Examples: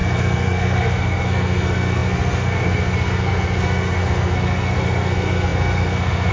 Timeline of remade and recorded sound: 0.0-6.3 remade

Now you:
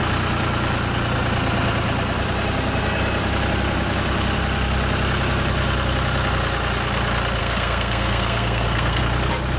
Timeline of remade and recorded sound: 0.0-7.4 recorded; 7.4-9.0 remade; 9.0-9.6 recorded

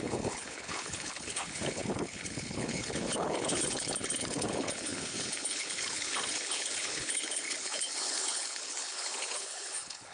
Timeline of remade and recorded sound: 0.0-10.1 remade

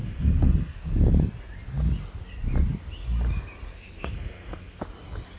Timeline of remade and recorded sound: 0.0-0.8 remade; 0.8-3.7 recorded; 3.7-4.8 remade; 4.8-5.4 recorded

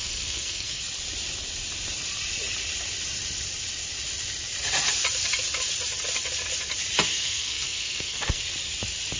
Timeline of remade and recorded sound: 0.0-0.8 remade; 0.8-7.1 recorded; 7.1-8.4 remade; 8.4-9.2 recorded

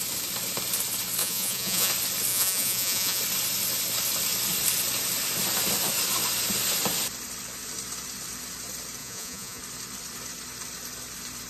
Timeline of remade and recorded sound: 0.0-1.2 recorded; 1.2-1.9 remade; 1.9-2.3 recorded; 2.3-3.2 remade; 3.2-9.0 recorded; 9.0-9.6 remade; 9.6-11.5 recorded

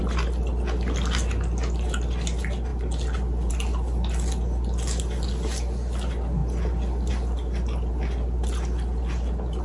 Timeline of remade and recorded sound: 0.0-9.6 recorded